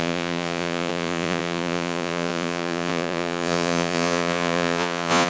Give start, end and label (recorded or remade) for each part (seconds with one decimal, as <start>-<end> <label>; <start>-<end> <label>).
0.0-5.3 remade